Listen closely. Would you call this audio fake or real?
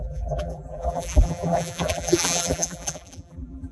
fake